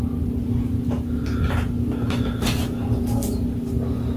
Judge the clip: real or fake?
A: real